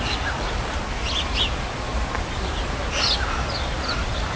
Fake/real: real